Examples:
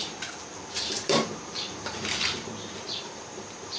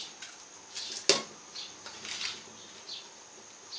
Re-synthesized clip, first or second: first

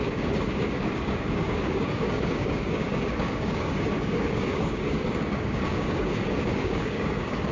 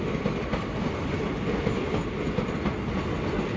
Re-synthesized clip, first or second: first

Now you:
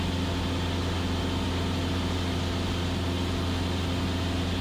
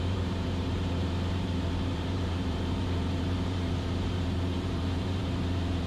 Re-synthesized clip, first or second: second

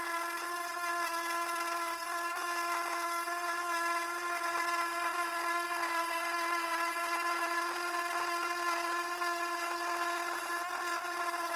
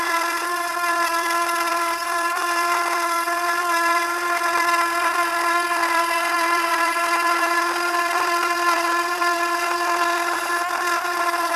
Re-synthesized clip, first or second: second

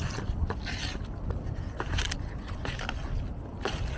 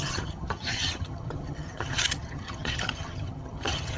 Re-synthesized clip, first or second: second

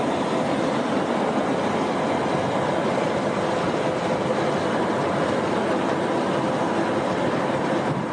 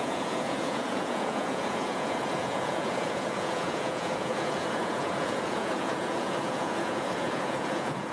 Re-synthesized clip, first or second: second